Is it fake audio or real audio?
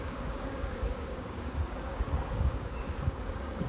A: fake